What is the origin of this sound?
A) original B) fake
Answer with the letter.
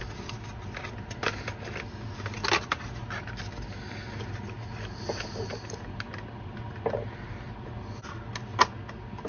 A